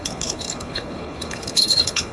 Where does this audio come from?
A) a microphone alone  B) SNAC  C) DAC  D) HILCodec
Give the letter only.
D